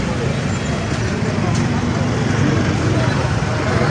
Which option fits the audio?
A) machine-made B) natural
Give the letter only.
B